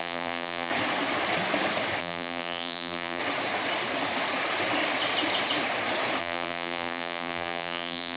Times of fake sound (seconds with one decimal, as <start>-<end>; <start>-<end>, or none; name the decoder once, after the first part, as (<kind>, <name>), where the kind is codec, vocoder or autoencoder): 0.0-0.7 (vocoder, BigVGAN v2); 2.0-3.2; 6.2-8.2